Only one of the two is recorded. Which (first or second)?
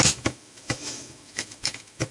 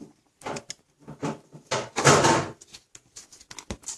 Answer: second